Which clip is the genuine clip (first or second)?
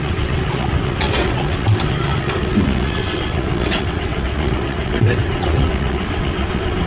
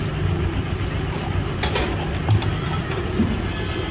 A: second